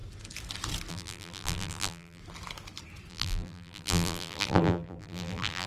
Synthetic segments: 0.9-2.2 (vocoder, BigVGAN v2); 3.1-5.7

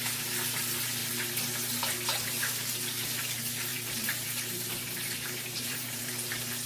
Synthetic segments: 3.7-6.3 (vocoder, BigVGAN v2)

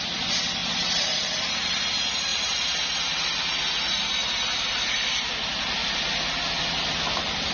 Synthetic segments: 0.6-1.9 (vocoder, BigVGAN v2); 4.2-5.1

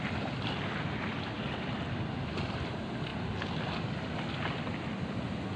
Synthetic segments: none